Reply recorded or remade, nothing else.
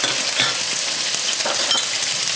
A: recorded